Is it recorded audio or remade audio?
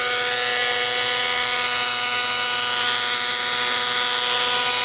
recorded